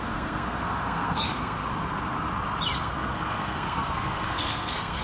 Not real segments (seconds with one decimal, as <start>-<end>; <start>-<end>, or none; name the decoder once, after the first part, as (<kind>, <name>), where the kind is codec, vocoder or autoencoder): 0.0-1.6 (codec, SNAC); 2.8-5.0